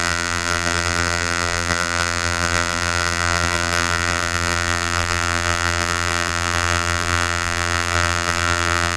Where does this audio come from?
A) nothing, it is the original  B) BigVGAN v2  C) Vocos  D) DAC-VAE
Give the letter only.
B